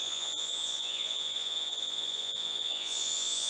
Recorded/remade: remade